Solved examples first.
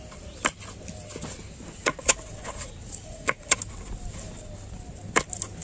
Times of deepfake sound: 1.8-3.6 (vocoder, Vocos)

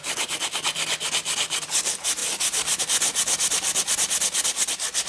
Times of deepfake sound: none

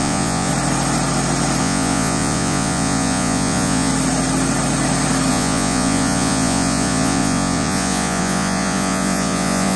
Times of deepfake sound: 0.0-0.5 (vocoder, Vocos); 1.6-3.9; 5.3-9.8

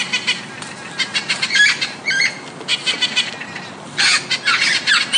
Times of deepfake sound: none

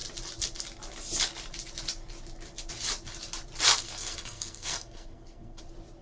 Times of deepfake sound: 3.7-5.6 (codec, SNAC)

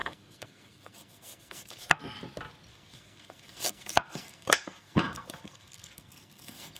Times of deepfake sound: 0.0-2.0 (codec, SNAC); 2.7-6.8